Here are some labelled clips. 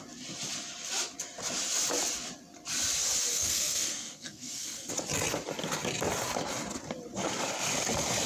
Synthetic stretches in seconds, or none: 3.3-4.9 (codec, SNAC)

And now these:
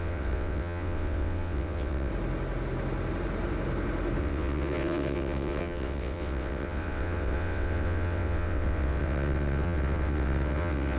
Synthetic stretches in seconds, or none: 0.0-2.1 (vocoder, WaveNeXt); 4.2-11.0

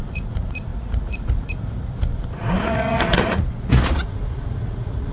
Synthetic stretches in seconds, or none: 0.0-5.1 (vocoder, Vocos)

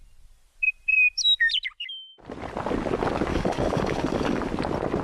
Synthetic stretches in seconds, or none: 3.3-4.4 (codec, DAC)

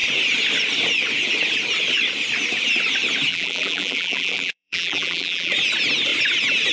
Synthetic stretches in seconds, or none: 3.3-5.5 (vocoder, BigVGAN v2)

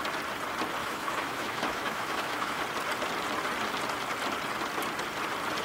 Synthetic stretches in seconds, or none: 0.8-2.6 (autoencoder, DAC-VAE)

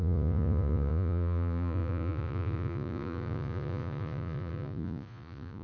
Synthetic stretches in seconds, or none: 0.0-5.6 (vocoder, Vocos)

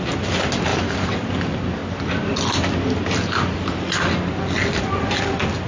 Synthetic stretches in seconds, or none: 0.7-1.3 (vocoder, BigVGAN v2)